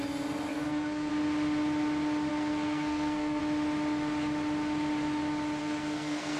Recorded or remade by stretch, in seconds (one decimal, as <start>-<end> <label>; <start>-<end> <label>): 0.0-0.5 recorded; 0.5-1.1 remade; 1.1-2.3 recorded; 2.3-3.4 remade; 3.4-5.6 recorded; 5.6-6.4 remade